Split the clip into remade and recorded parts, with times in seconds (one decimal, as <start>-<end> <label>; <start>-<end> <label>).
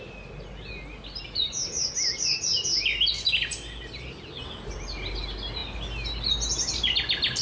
0.0-7.4 recorded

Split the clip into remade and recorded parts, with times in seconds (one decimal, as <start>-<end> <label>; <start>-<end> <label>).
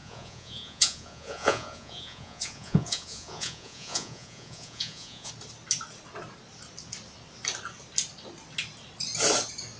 0.0-5.3 remade; 5.3-9.8 recorded